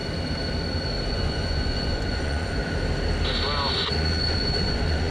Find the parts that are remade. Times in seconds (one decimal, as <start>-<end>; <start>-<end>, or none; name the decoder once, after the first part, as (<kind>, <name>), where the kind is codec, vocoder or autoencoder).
1.1-2.6 (vocoder, Vocos); 3.7-5.1